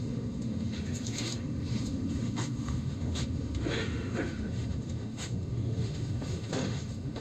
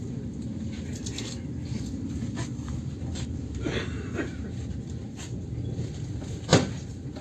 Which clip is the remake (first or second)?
first